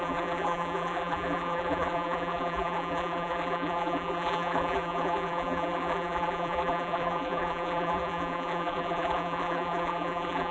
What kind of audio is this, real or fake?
fake